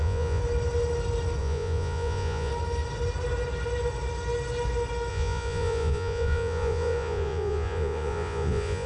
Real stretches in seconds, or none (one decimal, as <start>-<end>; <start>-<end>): 0.4-1.4; 2.5-5.1